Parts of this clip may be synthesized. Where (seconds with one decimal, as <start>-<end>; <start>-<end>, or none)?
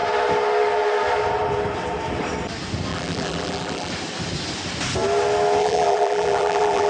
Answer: 2.9-3.9; 5.6-6.9